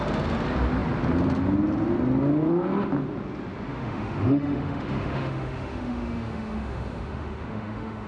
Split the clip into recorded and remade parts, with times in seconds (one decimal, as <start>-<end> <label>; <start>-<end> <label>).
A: 0.0-3.7 recorded; 3.7-8.1 remade